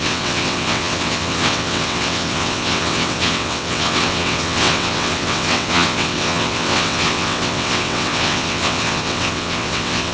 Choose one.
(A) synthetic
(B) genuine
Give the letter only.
A